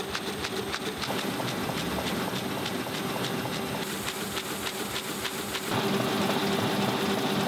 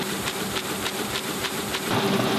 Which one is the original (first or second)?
first